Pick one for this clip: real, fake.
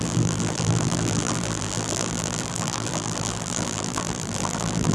fake